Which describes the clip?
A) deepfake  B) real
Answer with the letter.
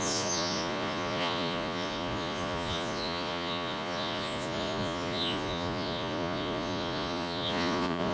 A